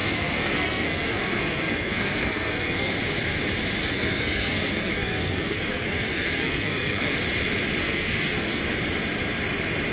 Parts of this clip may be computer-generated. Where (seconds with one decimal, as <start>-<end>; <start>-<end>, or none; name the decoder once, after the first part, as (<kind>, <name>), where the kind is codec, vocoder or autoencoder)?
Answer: 0.0-2.9 (codec, SNAC); 3.8-7.2; 7.8-8.6